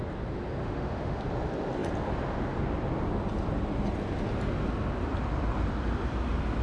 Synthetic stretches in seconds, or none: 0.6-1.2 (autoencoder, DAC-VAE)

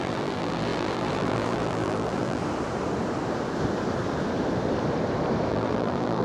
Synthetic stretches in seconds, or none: 0.0-2.4 (vocoder, BigVGAN v2); 5.5-6.2

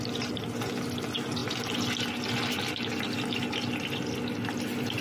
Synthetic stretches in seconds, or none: none